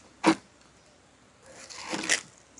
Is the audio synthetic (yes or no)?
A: no